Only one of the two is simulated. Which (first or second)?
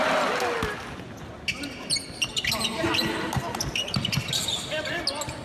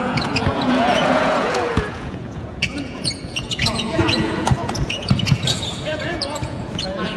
second